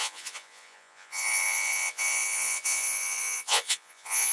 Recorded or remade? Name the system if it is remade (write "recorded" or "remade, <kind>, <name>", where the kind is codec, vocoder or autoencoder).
remade, vocoder, Vocos